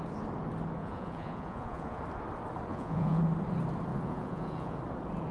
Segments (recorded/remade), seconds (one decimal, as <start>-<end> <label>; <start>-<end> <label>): 0.0-0.8 recorded; 0.8-2.0 remade; 2.0-2.7 recorded; 2.7-3.2 remade; 3.2-3.9 recorded; 3.9-4.8 remade; 4.8-5.3 recorded